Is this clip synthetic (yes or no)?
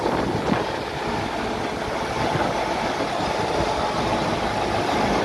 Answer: no